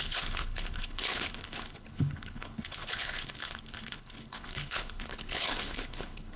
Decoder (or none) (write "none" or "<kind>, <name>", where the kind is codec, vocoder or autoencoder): codec, HILCodec